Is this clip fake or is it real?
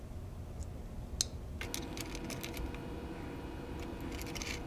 real